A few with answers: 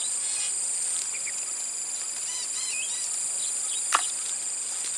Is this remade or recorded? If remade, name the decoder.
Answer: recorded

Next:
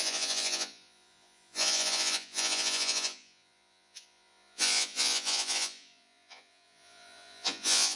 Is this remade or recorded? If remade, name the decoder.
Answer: remade, vocoder, Vocos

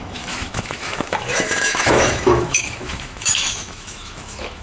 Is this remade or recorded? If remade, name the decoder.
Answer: remade, autoencoder, DAC-VAE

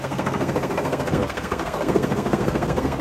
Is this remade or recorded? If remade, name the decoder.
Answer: remade, codec, SNAC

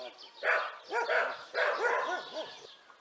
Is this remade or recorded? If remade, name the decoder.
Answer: recorded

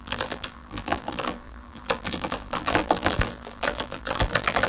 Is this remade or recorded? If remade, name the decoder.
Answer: remade, vocoder, BigVGAN v2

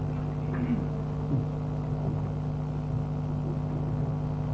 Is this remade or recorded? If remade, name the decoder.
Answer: recorded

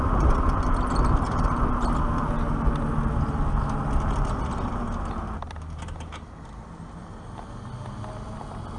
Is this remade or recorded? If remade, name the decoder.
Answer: recorded